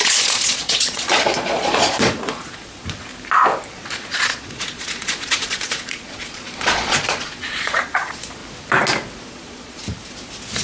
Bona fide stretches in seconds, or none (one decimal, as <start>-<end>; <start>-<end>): 3.1-3.7; 8.4-9.3; 9.8-10.6